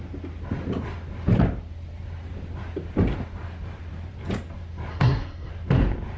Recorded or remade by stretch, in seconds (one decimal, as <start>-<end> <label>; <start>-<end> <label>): 0.0-4.9 recorded; 4.9-5.5 remade; 5.5-6.2 recorded